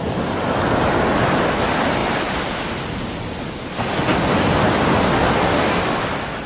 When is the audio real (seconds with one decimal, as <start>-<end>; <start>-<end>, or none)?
0.0-6.5